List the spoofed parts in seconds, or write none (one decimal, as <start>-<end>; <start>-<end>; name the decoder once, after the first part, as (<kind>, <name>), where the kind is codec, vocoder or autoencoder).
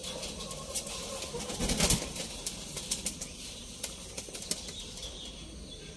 none